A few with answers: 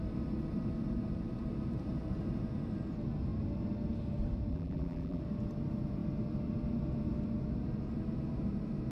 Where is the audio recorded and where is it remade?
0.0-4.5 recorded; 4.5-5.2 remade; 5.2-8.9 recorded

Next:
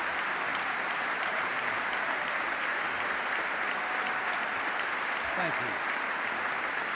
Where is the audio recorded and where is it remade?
0.0-0.5 remade; 0.5-1.2 recorded; 1.2-2.7 remade; 2.7-6.9 recorded

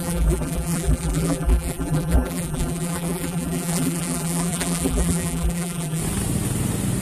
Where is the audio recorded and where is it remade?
0.0-6.0 remade; 6.0-7.0 recorded

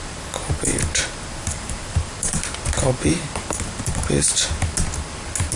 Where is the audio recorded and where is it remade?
0.0-1.4 recorded; 1.4-4.6 remade; 4.6-5.6 recorded

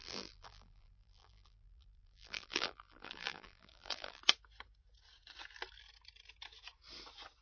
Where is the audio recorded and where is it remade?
0.0-4.2 remade; 4.2-7.4 recorded